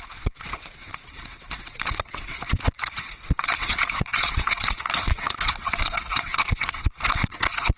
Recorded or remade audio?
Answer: remade